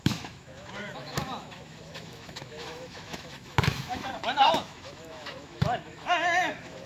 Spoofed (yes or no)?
yes